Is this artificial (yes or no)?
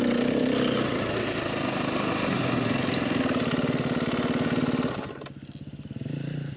no